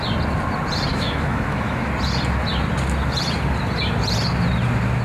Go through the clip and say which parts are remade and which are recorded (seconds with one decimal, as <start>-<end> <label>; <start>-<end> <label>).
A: 0.0-0.9 recorded; 0.9-1.9 remade; 1.9-5.0 recorded